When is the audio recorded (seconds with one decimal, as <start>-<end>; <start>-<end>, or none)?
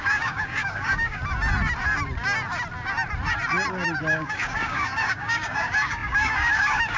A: 1.2-4.1